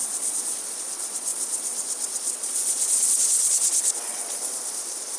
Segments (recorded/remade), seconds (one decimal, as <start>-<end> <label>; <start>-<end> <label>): 0.0-5.2 remade